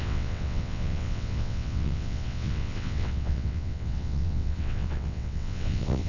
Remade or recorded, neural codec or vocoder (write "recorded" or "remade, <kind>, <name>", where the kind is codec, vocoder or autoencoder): remade, vocoder, WaveNeXt